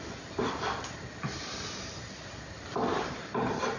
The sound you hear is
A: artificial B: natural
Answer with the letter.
B